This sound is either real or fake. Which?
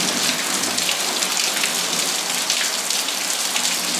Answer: real